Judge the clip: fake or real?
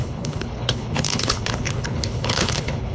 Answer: fake